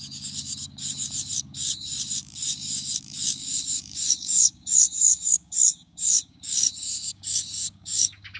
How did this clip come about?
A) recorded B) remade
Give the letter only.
B